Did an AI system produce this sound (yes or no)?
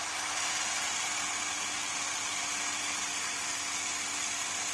no